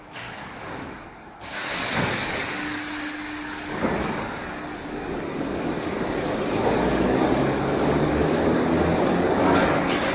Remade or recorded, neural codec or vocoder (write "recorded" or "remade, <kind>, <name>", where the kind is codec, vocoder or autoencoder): remade, codec, DAC